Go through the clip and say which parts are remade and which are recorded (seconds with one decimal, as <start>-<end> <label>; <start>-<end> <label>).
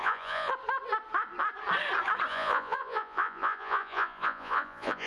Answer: 0.0-0.5 remade; 0.5-2.3 recorded; 2.3-5.1 remade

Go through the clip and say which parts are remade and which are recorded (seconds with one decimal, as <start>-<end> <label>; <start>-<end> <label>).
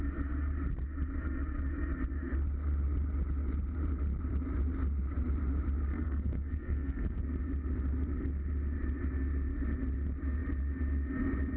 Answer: 0.0-5.9 recorded; 5.9-7.2 remade; 7.2-11.6 recorded